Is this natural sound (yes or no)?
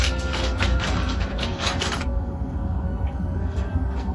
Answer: no